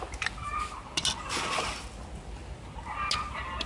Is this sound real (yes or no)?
yes